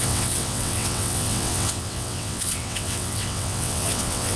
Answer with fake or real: fake